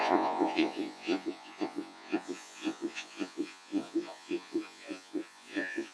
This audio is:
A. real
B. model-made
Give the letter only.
B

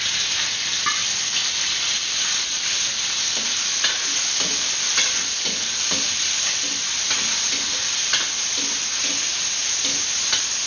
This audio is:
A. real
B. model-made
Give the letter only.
A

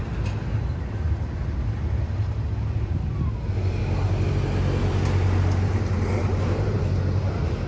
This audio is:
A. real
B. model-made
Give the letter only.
A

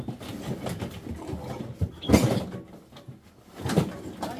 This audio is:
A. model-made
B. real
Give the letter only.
B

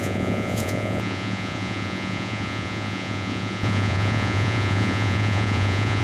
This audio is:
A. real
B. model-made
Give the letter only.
B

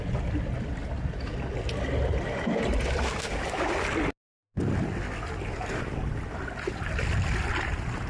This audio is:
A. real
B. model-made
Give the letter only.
A